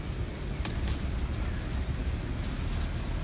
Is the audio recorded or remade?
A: recorded